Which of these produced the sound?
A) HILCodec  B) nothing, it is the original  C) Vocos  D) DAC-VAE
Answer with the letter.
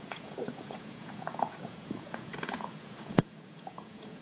C